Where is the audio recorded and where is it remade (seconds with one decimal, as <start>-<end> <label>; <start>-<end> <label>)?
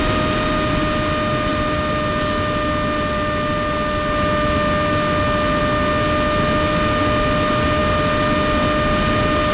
0.0-9.5 recorded